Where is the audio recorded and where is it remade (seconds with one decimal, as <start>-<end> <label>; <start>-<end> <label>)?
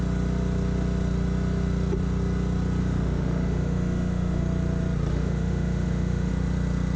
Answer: 0.0-2.8 recorded; 2.8-4.4 remade; 4.4-5.1 recorded; 5.1-6.3 remade; 6.3-7.0 recorded